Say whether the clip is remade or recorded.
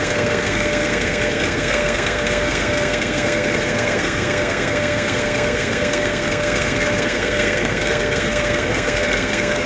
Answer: remade